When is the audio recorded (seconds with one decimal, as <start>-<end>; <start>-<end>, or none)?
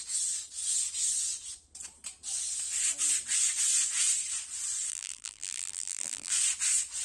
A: 0.0-4.9; 6.3-7.0